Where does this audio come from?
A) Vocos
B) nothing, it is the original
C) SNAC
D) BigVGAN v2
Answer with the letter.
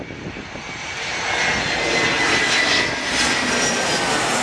B